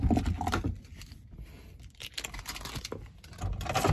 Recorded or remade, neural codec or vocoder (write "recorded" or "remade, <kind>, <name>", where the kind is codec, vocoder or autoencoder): recorded